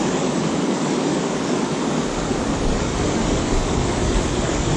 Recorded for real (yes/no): no